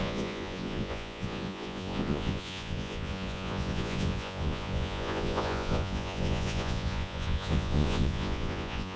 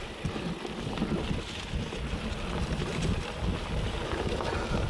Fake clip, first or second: first